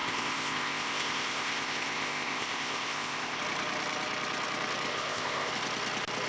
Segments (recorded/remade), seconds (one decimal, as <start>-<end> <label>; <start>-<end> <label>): 0.0-3.4 remade; 3.4-4.9 recorded; 4.9-5.5 remade; 5.5-6.3 recorded